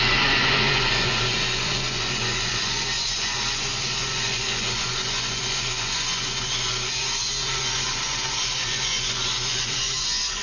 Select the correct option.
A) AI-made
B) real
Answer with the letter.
A